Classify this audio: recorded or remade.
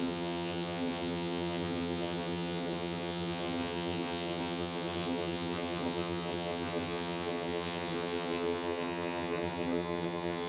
remade